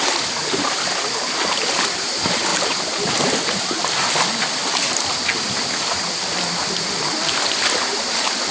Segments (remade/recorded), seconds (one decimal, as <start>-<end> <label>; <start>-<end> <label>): 0.0-2.5 recorded; 2.5-3.9 remade; 3.9-4.6 recorded; 4.6-6.0 remade; 6.0-8.5 recorded